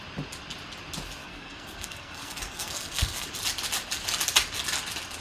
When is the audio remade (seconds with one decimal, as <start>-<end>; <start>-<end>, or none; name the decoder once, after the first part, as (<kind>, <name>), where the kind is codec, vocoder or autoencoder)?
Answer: 1.2-3.3 (codec, SNAC)